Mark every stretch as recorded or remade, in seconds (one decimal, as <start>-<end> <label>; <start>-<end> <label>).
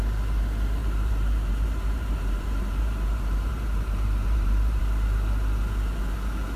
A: 0.0-0.8 recorded; 0.8-4.8 remade; 4.8-6.6 recorded